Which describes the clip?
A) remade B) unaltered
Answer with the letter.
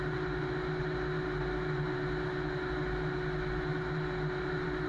B